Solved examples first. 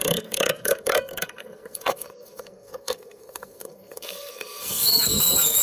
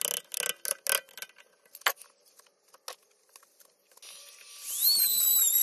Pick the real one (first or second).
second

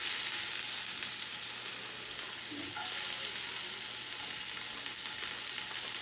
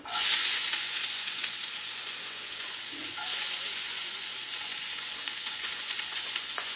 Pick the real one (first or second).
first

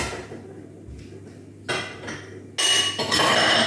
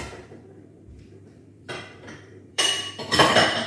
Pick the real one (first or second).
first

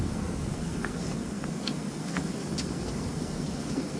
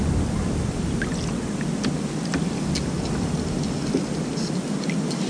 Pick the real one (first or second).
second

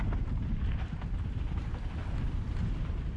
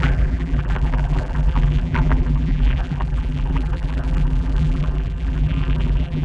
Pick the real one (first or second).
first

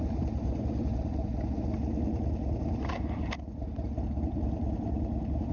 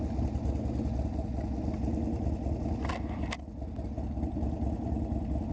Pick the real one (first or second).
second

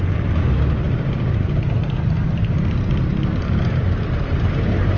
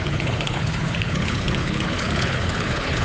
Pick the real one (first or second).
first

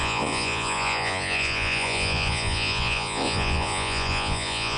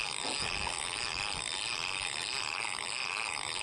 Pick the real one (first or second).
second